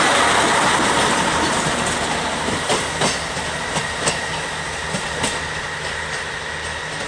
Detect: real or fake real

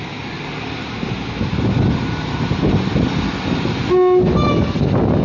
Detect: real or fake real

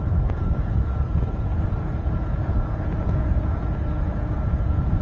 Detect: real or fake fake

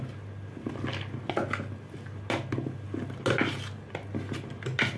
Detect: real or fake real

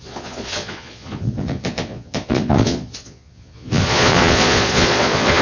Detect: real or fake fake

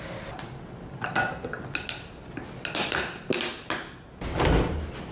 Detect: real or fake real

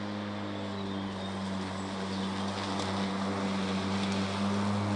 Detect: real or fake real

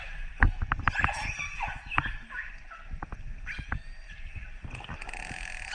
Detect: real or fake real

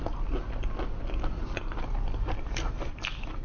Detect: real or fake real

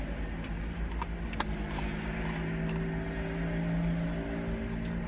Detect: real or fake real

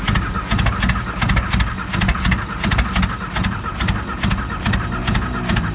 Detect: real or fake real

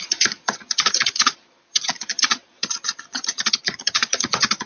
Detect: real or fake fake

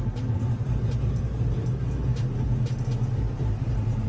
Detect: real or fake real